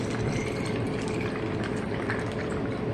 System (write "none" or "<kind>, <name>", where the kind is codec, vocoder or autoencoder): none